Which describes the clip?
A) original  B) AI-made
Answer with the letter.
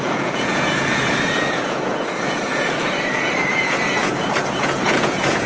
B